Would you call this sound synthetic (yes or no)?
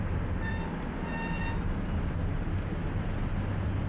no